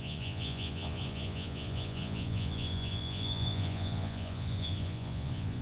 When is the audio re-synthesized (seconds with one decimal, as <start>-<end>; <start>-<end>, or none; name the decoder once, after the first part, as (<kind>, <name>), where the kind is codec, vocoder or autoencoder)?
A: 0.0-5.6 (vocoder, Vocos)